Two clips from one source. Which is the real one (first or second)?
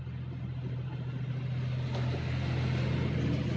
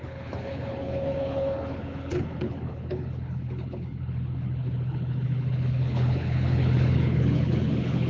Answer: first